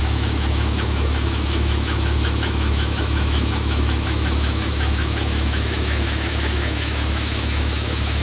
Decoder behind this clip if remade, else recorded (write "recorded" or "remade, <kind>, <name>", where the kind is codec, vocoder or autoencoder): remade, autoencoder, DAC-VAE